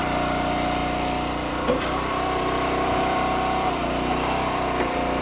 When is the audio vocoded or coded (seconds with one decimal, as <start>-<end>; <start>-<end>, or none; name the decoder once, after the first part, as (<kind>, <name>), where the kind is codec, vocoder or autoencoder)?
0.0-5.2 (vocoder, BigVGAN v2)